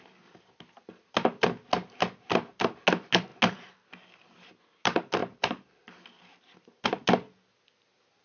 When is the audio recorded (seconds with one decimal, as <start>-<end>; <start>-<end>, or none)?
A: 0.0-5.2; 7.0-8.2